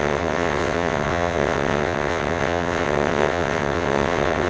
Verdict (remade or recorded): remade